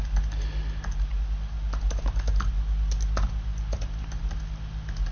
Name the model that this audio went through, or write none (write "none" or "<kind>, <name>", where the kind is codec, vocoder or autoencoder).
none